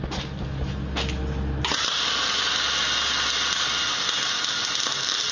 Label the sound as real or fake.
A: real